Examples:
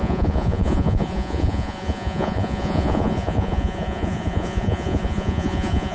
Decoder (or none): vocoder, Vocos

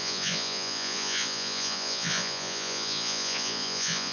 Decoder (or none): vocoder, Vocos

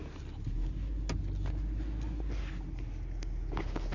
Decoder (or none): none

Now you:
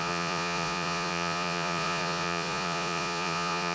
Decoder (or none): vocoder, Vocos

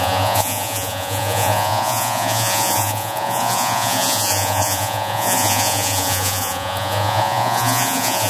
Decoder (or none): vocoder, Vocos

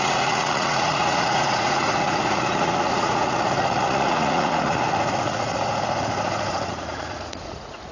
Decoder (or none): vocoder, Vocos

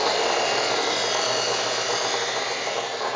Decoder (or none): none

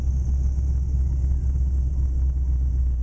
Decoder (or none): none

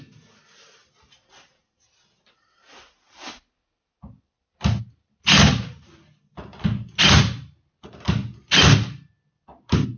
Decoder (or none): none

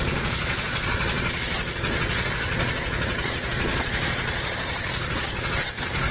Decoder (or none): vocoder, Vocos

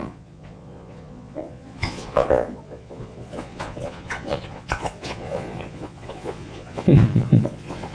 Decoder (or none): vocoder, Vocos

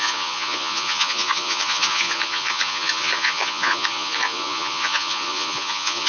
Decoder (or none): vocoder, Vocos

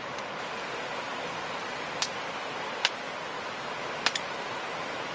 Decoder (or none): none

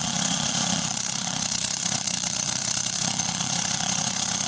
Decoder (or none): vocoder, Vocos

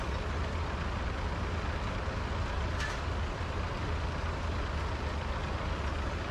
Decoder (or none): none